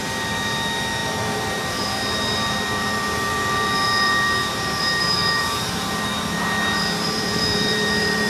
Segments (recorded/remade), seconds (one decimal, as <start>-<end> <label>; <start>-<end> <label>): 0.0-8.3 remade